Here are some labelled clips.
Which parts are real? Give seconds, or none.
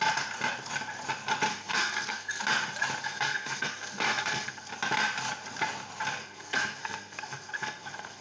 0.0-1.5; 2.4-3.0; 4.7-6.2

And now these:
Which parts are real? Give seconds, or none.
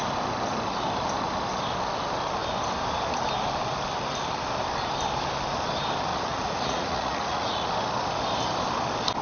0.0-6.1; 7.7-9.2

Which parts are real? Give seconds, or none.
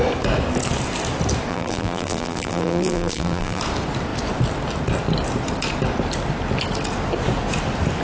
0.0-1.5; 3.6-8.0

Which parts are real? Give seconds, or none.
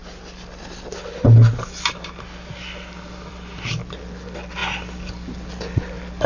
0.0-6.3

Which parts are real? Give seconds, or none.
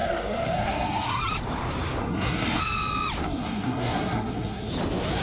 1.2-2.0; 2.6-3.2; 4.7-5.2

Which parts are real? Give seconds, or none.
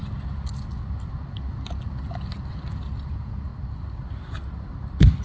0.0-3.1; 3.5-5.2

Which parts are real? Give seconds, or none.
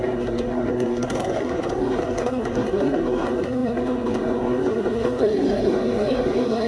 none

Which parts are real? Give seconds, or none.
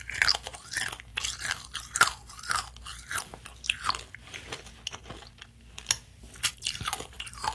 0.0-7.5